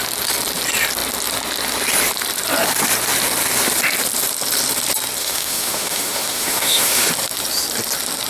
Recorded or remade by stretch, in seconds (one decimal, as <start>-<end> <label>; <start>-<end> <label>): 0.0-5.2 recorded; 5.2-7.1 remade; 7.1-8.3 recorded